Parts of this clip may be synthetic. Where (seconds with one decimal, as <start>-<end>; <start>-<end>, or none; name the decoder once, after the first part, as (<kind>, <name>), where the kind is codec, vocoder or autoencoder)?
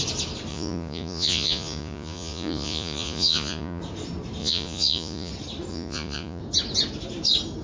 0.5-3.8 (vocoder, Vocos); 4.4-5.3; 5.7-6.4